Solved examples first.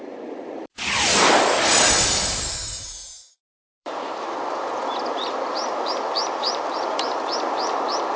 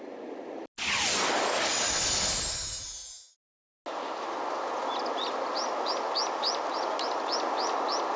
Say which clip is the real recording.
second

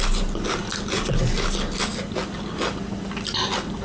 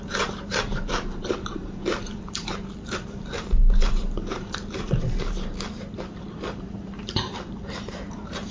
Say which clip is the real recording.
first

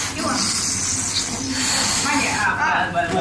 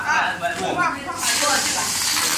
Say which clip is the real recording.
first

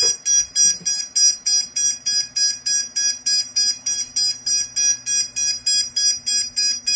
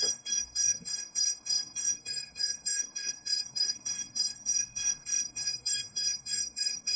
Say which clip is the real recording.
first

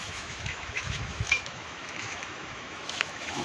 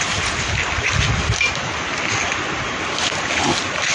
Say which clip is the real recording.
second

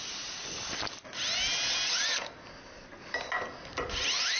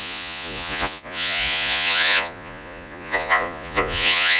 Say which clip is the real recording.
first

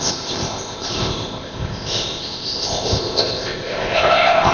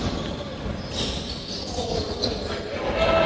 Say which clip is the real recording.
second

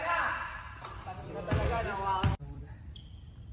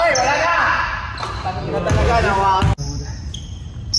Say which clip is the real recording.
second